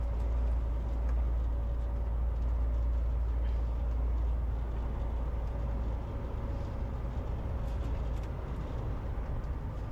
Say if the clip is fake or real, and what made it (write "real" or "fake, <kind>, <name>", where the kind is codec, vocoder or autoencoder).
real